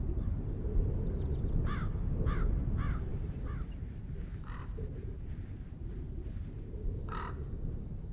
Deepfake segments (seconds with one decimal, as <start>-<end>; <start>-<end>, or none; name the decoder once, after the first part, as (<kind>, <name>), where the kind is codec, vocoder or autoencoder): none